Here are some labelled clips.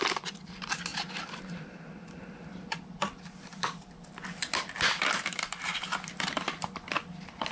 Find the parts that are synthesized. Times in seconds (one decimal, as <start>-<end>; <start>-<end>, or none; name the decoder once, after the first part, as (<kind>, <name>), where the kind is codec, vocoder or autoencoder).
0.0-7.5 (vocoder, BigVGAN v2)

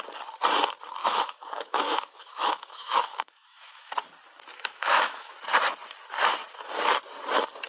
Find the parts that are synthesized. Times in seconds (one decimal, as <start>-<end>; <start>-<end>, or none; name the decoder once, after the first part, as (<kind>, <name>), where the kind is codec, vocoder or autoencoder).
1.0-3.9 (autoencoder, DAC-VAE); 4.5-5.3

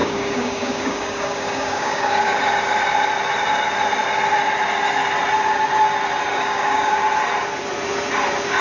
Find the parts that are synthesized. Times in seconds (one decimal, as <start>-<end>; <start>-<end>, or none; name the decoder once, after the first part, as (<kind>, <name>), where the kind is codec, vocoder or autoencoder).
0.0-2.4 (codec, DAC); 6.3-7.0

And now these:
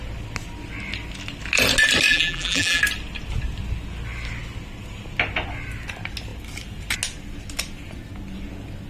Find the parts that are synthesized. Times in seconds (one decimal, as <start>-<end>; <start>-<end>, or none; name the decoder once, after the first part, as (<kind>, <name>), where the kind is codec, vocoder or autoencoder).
2.1-2.8 (vocoder, BigVGAN v2)

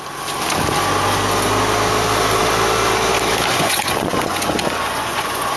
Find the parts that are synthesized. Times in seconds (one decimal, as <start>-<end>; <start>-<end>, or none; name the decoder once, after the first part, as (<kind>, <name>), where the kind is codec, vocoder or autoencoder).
3.5-5.6 (vocoder, Vocos)

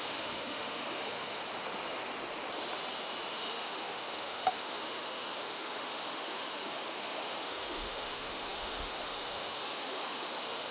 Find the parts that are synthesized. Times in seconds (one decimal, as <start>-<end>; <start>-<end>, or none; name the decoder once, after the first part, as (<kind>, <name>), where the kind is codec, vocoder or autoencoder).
0.0-1.4 (autoencoder, DAC-VAE); 3.3-10.7